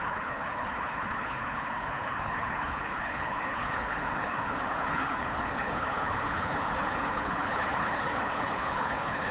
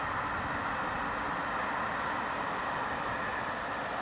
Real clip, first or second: second